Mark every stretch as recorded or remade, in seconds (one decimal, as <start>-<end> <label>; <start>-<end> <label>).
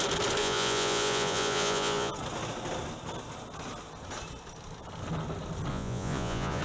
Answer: 0.0-0.4 recorded; 0.4-2.1 remade; 2.1-5.7 recorded; 5.7-6.6 remade